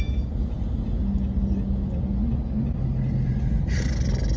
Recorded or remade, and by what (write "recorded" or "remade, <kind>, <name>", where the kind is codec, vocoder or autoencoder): recorded